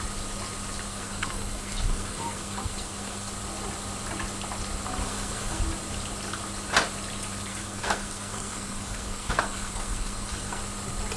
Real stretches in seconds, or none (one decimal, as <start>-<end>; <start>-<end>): 0.0-0.9; 3.3-5.0; 5.6-7.5; 10.6-11.2

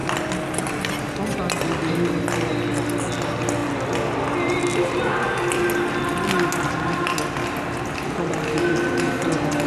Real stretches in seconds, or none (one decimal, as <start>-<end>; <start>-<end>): 0.0-9.7

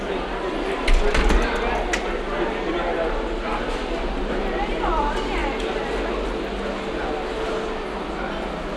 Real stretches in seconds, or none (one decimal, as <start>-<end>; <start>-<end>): 0.0-8.8

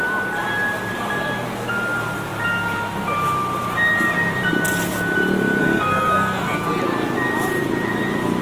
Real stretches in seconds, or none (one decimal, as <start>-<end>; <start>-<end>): 0.0-5.6; 6.8-8.4